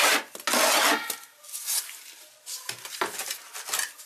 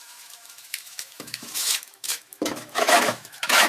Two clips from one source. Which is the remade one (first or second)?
second